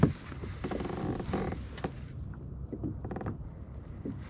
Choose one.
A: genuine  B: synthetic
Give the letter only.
A